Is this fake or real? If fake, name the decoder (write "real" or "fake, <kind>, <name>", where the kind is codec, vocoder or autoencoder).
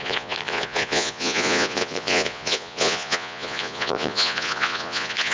fake, vocoder, Vocos